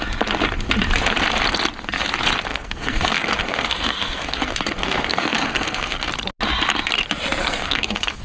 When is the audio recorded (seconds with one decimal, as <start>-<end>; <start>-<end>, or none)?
0.0-2.5; 6.1-7.4